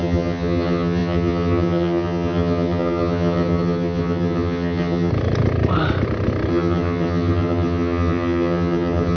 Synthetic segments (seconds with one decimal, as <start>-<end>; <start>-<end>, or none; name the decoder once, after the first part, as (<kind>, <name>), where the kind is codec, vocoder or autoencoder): 0.0-5.1 (vocoder, HiFi-GAN); 6.5-9.2